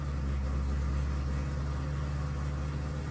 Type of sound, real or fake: real